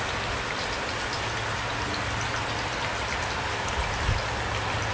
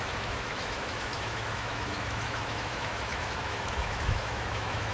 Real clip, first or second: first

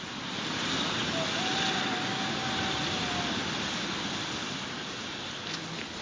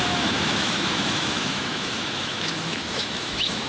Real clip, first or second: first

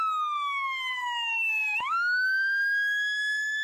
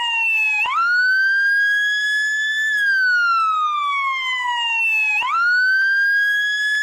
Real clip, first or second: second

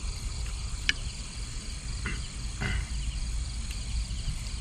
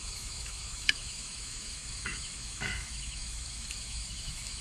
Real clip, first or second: first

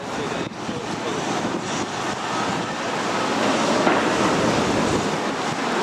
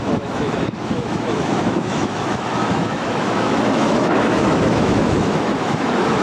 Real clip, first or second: first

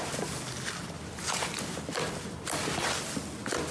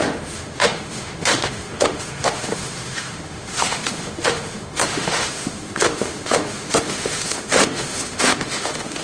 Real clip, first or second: first